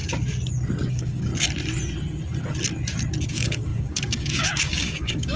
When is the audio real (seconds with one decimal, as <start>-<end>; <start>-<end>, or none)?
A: 0.0-0.9; 1.3-3.3